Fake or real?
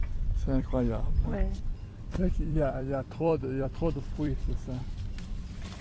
fake